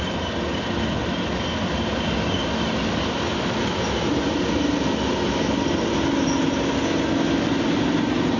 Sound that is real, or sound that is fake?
real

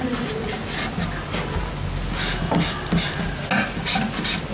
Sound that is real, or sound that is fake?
real